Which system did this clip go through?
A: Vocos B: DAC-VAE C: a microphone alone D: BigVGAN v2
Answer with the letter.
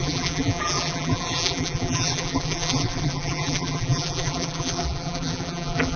D